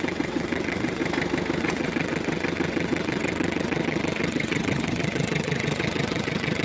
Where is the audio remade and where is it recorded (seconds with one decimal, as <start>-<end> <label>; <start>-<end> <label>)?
0.0-1.0 remade; 1.0-1.6 recorded; 1.6-6.6 remade